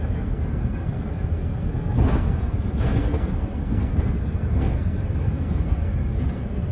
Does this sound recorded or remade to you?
remade